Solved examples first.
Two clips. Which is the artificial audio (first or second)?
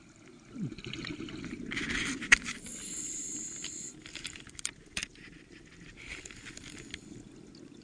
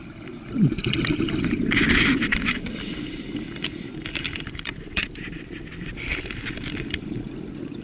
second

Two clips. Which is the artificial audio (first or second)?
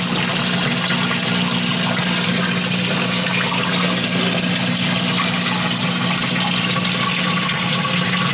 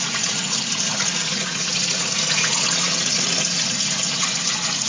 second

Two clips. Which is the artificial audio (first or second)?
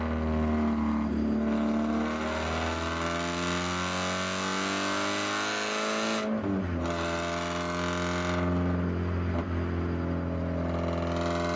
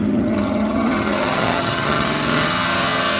second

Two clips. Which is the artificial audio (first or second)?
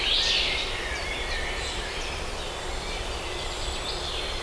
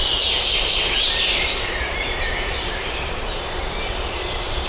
second